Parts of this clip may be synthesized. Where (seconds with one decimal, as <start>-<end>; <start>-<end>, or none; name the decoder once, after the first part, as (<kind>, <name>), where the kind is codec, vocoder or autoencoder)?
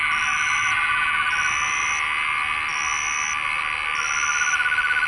none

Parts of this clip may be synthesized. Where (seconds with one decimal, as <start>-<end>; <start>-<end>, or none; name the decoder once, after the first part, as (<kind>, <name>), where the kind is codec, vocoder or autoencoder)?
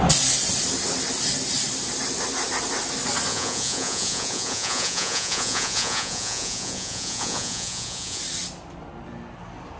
3.3-8.2 (vocoder, Vocos)